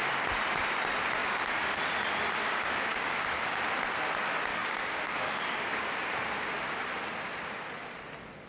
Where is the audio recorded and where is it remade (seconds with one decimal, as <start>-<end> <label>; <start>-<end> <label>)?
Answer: 0.0-1.2 recorded; 1.2-1.8 remade; 1.8-2.4 recorded; 2.4-3.6 remade; 3.6-4.5 recorded; 4.5-5.9 remade; 5.9-8.5 recorded